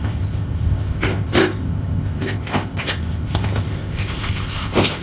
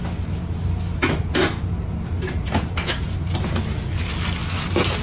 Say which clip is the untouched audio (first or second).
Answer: second